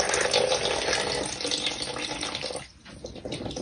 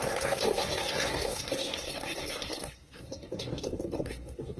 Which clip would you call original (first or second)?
first